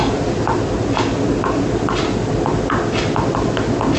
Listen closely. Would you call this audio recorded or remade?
recorded